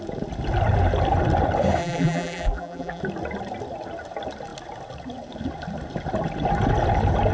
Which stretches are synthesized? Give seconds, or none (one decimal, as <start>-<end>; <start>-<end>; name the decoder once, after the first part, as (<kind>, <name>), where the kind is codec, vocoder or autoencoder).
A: 1.8-3.0 (vocoder, BigVGAN v2)